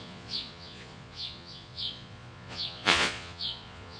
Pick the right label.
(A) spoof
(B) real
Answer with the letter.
A